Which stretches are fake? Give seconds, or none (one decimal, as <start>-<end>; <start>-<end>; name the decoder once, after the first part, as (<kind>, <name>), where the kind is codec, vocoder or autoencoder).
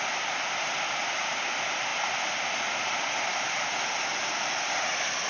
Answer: 1.9-2.9 (vocoder, BigVGAN v2)